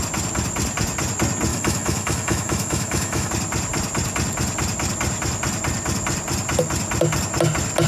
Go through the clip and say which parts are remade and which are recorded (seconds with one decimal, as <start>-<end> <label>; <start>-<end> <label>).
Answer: 0.0-1.5 recorded; 1.5-3.3 remade; 3.3-7.9 recorded